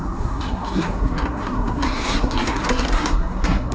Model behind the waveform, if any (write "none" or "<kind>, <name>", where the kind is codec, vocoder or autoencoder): codec, SNAC